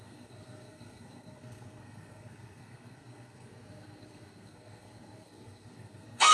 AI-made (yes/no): yes